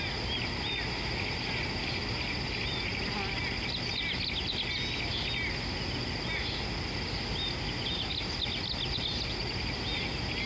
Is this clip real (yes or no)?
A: yes